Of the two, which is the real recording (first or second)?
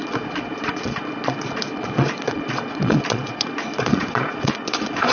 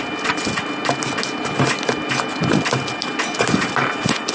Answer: second